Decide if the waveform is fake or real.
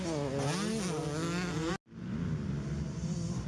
real